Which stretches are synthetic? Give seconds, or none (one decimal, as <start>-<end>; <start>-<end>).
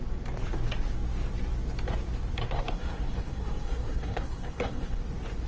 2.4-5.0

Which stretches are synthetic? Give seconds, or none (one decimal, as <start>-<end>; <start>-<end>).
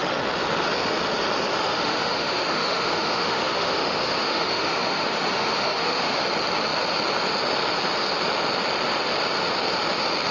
1.5-6.2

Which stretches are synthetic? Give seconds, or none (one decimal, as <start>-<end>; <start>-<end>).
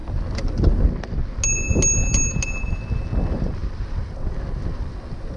none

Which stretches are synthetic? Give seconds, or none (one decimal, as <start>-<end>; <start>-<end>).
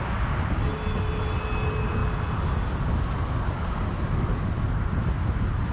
none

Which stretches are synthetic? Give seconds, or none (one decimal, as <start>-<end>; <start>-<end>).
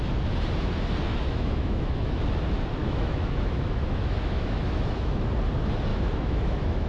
1.1-2.1; 2.8-5.3; 5.9-6.9